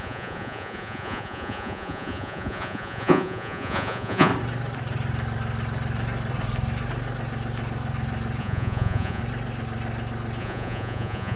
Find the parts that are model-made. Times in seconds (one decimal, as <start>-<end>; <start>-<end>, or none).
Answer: 0.0-4.3; 8.4-9.2; 10.4-11.4